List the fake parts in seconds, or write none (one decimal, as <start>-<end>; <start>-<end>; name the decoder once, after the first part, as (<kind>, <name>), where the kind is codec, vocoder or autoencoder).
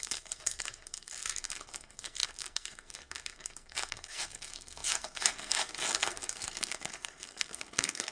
0.0-8.1 (codec, SNAC)